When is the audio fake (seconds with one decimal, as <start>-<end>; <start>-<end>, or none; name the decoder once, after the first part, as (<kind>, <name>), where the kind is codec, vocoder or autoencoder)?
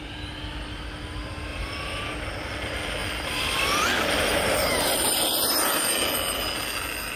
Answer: 1.5-2.0 (vocoder, BigVGAN v2); 3.0-5.7